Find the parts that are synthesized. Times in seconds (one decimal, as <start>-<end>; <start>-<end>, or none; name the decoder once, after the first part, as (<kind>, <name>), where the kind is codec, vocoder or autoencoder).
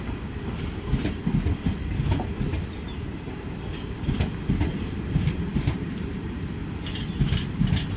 2.5-3.4 (vocoder, BigVGAN v2); 4.7-6.1